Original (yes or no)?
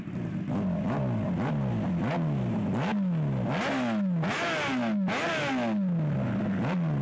yes